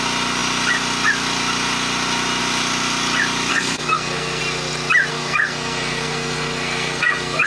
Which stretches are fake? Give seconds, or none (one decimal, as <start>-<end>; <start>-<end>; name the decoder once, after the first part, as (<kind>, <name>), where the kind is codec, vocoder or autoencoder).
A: 3.5-4.4 (codec, SNAC); 5.1-7.5